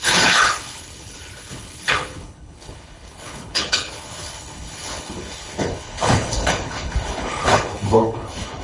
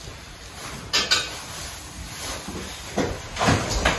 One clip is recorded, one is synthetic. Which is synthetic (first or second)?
first